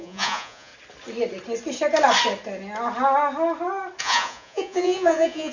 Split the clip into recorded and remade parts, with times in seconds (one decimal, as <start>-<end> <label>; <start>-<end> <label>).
0.0-0.7 remade; 0.7-4.0 recorded; 4.0-5.5 remade